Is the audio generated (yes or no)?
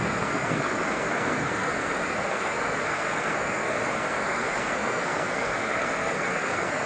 yes